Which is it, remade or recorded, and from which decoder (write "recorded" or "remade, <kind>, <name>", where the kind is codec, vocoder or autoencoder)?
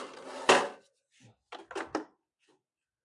recorded